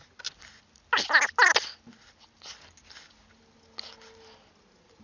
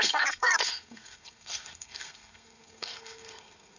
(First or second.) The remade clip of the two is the second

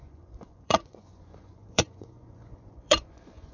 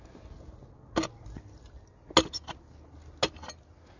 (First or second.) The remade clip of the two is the first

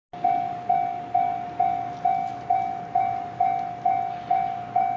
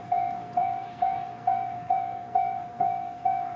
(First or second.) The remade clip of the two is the second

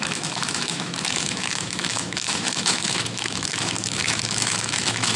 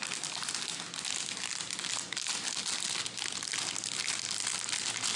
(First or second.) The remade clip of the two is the first